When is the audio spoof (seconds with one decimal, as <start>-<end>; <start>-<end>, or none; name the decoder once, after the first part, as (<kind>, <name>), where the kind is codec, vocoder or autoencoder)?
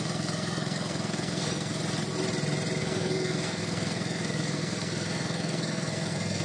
0.0-1.8 (codec, SNAC); 2.8-6.4